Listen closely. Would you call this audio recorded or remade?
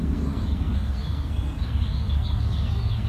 remade